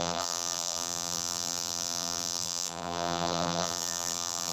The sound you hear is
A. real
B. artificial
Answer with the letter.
B